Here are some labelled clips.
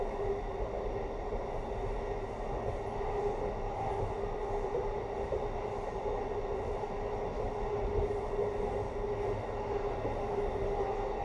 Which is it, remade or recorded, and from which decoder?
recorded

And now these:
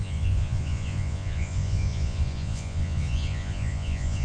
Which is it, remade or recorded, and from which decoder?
remade, vocoder, Vocos